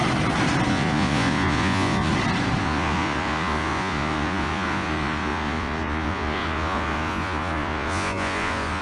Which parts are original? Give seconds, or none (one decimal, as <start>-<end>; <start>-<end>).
0.0-0.7; 2.1-2.6